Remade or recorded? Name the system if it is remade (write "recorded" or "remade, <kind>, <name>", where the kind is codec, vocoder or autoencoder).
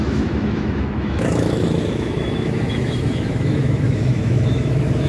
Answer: remade, autoencoder, DAC-VAE